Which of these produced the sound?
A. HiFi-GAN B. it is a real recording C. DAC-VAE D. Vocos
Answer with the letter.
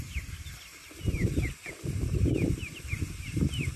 B